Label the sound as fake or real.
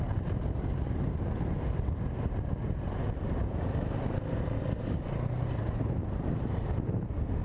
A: fake